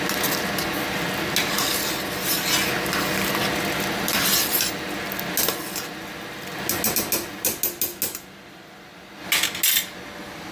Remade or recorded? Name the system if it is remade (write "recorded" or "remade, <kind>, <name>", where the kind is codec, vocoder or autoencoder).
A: recorded